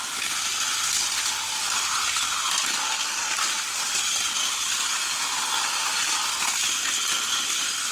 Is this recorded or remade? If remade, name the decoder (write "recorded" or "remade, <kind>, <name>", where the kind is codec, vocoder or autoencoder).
recorded